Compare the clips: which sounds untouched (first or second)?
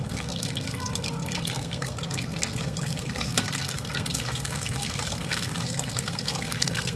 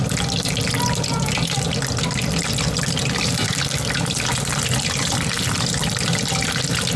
second